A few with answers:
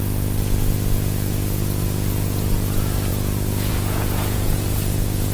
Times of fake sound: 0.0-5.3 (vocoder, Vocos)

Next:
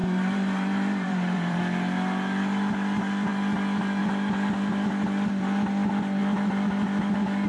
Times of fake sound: 0.0-1.6 (vocoder, BigVGAN v2)

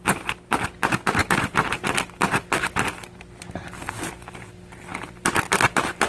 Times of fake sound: none

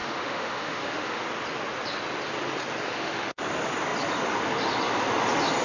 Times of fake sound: 0.0-1.2 (autoencoder, DAC-VAE); 2.9-3.4

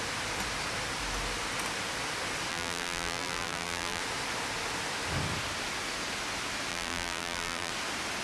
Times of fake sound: 2.5-4.0 (vocoder, BigVGAN v2); 6.7-7.7

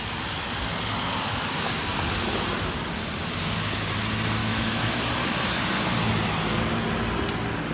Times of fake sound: 4.4-5.1 (autoencoder, DAC-VAE)

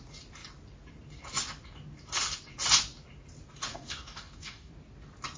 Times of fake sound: 3.7-4.7 (codec, DAC)

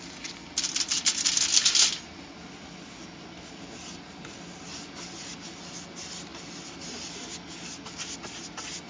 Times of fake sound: none